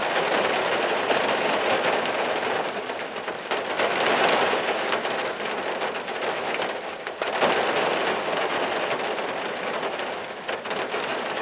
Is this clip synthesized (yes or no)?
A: no